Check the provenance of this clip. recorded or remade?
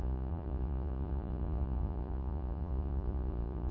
remade